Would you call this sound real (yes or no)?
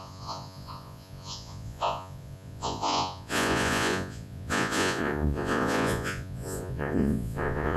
no